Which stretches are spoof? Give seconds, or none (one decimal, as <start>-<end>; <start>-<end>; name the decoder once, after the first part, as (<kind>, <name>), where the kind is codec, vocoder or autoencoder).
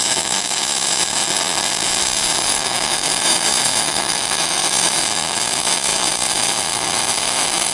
0.0-1.3 (autoencoder, DAC-VAE); 2.5-7.7